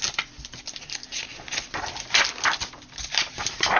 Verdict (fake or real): real